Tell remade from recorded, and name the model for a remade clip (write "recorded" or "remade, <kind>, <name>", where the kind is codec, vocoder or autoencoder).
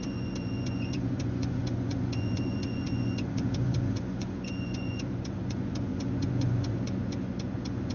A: remade, vocoder, Vocos